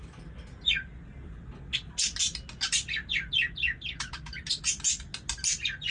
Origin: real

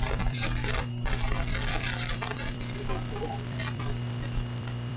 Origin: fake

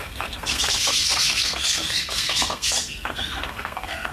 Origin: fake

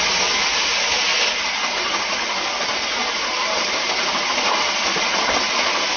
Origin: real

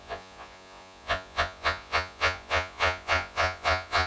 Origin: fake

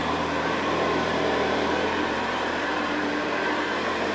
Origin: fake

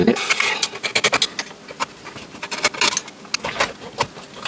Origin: real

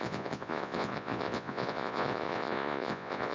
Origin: fake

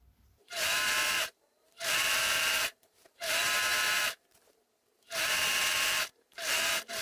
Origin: fake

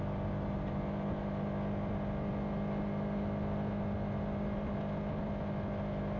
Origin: real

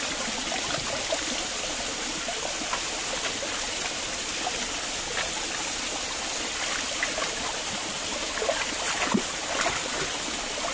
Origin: fake